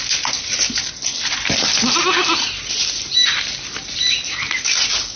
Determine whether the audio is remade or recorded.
recorded